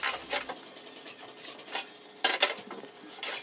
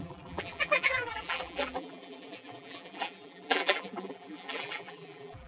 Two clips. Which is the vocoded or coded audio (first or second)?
second